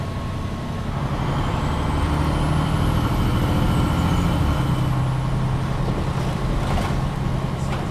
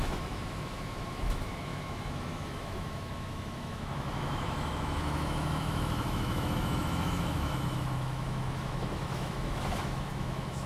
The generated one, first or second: second